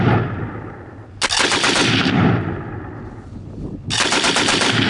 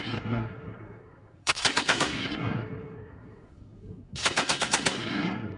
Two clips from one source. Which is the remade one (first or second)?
second